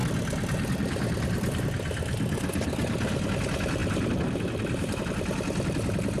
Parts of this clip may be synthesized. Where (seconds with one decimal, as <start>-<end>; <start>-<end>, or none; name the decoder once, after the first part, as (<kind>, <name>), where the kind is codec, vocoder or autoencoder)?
none